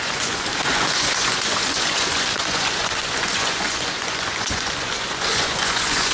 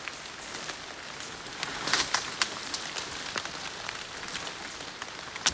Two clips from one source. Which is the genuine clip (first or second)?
second